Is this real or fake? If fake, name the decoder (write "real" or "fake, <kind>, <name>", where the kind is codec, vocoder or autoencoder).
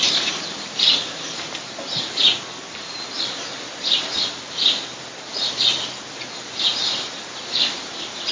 real